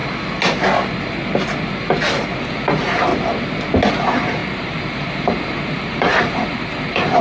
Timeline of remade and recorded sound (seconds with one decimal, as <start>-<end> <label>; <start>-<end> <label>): 0.0-2.4 recorded; 2.4-3.1 remade; 3.1-3.9 recorded; 3.9-7.2 remade